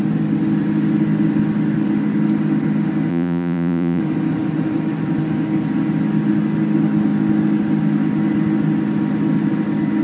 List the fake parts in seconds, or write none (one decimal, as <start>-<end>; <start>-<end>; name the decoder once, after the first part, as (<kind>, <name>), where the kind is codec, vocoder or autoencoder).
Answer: 3.1-4.0 (vocoder, Vocos)